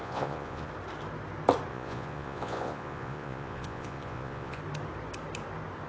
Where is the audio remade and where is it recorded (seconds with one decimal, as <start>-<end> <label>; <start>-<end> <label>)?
0.0-0.7 remade; 0.7-1.7 recorded; 1.7-4.6 remade; 4.6-5.9 recorded